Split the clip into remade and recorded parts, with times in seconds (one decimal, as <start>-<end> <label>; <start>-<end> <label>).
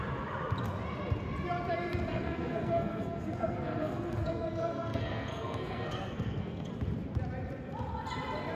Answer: 0.0-2.1 recorded; 2.1-6.7 remade; 6.7-8.5 recorded